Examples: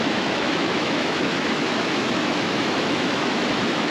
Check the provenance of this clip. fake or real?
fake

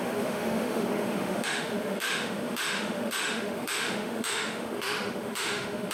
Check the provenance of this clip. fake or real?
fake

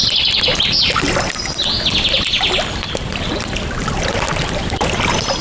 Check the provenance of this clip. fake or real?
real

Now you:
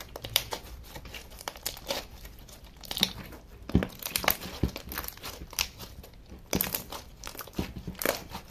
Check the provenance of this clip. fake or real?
fake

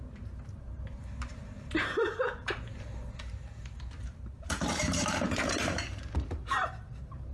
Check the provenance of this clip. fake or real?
fake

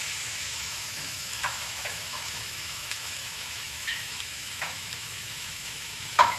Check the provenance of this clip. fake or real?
fake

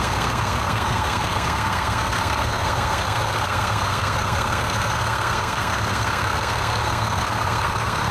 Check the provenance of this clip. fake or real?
fake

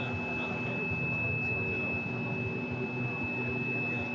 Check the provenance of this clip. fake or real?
real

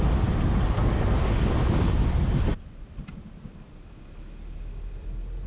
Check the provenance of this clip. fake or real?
real